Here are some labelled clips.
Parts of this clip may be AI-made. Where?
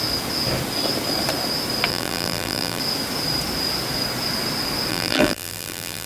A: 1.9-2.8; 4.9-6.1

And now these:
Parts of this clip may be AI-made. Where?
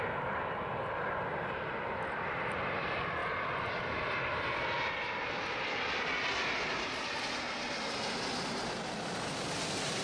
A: none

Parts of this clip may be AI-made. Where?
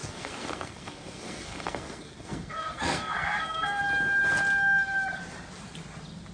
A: 0.0-3.8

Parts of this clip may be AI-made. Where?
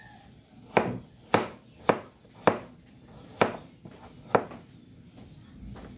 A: none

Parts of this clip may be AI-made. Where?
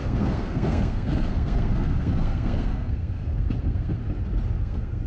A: 0.0-4.0; 4.6-5.1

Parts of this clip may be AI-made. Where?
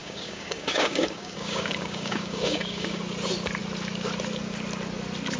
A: 0.0-3.0